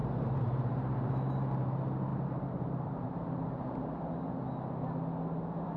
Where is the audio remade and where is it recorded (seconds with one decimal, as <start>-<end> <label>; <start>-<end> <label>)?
0.0-1.1 remade; 1.1-2.1 recorded; 2.1-4.0 remade; 4.0-5.8 recorded